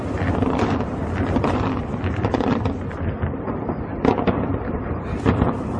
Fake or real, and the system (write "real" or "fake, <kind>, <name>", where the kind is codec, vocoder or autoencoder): fake, vocoder, BigVGAN v2